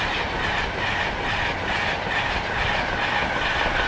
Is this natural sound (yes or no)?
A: yes